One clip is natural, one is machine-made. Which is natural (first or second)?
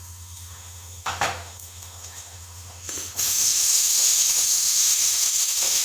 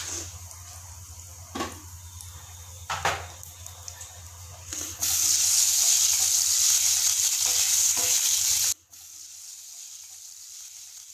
second